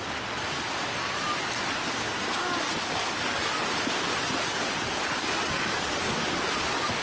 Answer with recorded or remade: recorded